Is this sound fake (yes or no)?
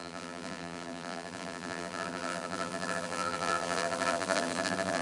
yes